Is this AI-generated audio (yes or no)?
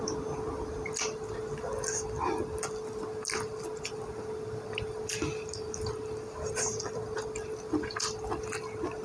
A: no